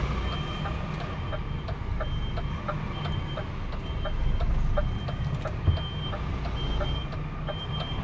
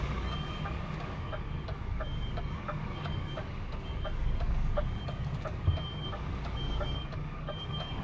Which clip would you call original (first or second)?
first